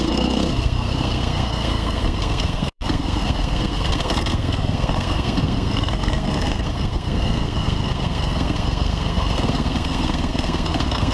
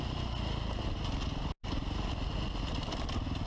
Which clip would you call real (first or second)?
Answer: second